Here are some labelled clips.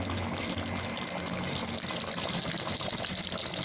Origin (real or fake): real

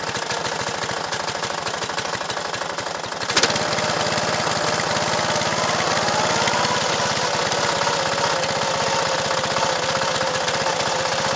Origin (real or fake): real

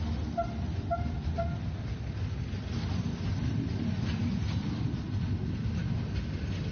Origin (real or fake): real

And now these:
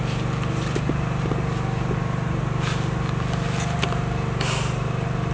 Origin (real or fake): real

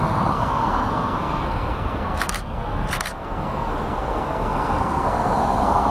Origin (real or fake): fake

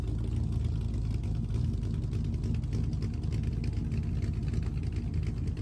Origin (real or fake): real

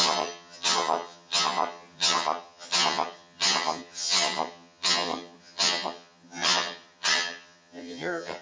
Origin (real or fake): fake